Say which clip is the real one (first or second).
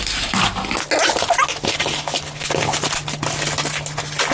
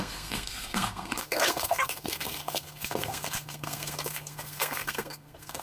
first